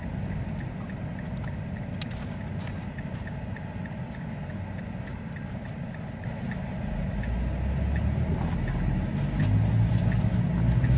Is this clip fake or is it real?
real